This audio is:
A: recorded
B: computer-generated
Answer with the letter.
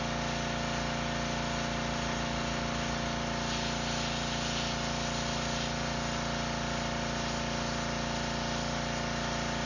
A